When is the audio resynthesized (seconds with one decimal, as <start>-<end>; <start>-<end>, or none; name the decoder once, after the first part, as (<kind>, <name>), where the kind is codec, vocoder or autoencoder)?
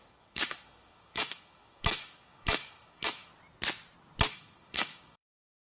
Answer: 0.0-3.3 (autoencoder, DAC-VAE); 4.3-5.7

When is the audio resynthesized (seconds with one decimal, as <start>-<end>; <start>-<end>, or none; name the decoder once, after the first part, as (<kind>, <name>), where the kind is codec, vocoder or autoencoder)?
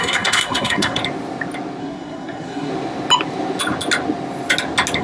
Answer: 0.0-1.0 (codec, SNAC); 1.8-2.7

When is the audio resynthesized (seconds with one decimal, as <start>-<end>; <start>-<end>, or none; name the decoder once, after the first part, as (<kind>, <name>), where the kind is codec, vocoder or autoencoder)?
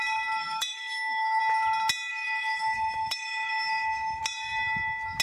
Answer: 0.4-1.4 (autoencoder, DAC-VAE); 2.1-4.2